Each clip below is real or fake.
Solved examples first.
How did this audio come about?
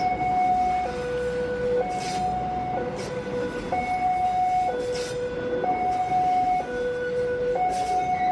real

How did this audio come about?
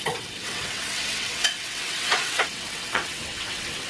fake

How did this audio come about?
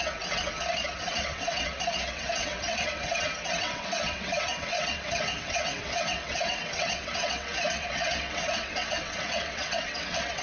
fake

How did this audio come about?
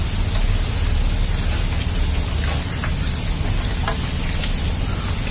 real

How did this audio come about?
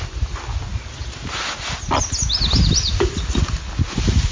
real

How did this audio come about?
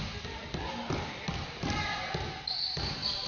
real